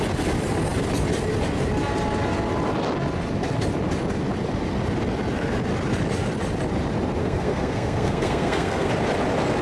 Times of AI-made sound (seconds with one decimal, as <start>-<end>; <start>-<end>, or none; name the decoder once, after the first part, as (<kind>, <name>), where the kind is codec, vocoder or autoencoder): 7.2-8.9 (codec, SNAC)